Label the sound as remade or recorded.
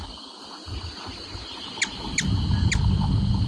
recorded